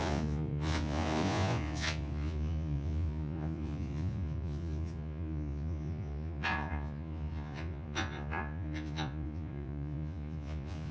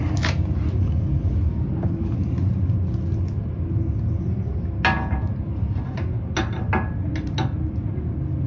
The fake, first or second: first